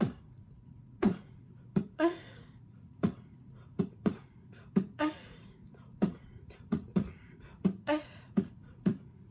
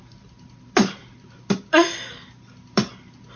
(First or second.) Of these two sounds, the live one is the second